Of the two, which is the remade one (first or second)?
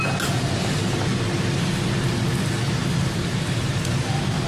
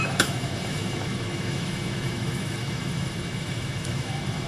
second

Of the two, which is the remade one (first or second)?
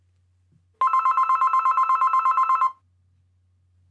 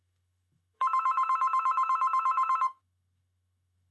second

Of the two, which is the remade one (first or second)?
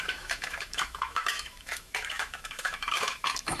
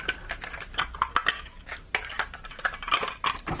first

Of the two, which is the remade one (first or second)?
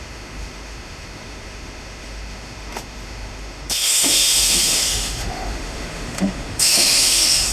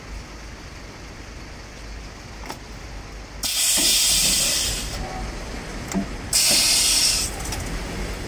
first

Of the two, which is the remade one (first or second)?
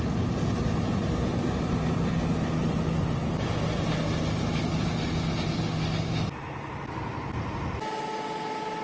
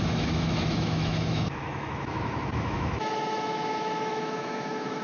second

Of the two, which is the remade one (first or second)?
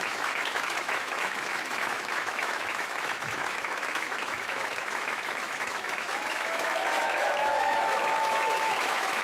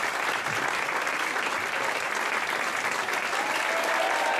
first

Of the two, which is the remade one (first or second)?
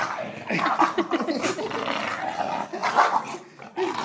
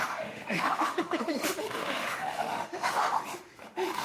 second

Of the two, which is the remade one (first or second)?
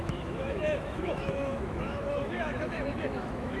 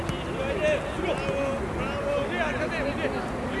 first